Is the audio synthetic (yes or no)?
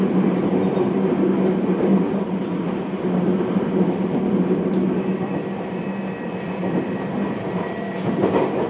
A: yes